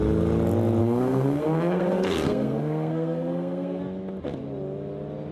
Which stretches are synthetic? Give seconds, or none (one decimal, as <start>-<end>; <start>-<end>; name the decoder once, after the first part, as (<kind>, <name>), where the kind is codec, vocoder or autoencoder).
0.8-3.8 (codec, SNAC)